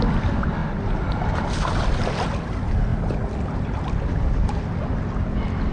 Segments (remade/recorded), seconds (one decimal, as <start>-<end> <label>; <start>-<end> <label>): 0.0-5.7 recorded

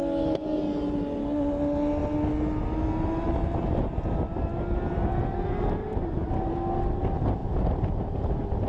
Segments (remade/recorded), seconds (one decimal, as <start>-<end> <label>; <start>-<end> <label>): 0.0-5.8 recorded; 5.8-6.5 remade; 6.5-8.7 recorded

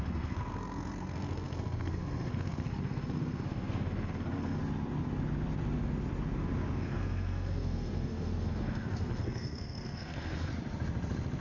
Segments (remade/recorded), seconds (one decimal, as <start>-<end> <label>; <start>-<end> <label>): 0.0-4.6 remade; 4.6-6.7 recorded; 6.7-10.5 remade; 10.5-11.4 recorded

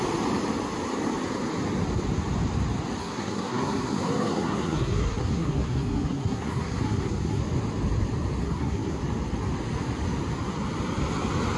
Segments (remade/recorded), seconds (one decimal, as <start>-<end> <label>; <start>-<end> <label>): 0.0-3.0 recorded; 3.0-7.4 remade; 7.4-8.4 recorded; 8.4-9.0 remade; 9.0-11.6 recorded